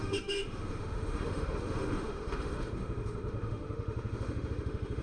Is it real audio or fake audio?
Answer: fake